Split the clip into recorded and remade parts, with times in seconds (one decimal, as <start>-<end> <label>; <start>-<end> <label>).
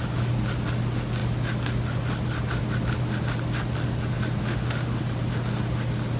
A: 0.0-4.4 recorded; 4.4-5.0 remade; 5.0-6.2 recorded